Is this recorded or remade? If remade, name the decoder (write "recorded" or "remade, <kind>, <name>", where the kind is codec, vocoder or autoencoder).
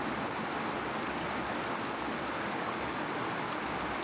recorded